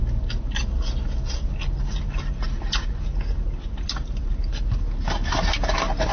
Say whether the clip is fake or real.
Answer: real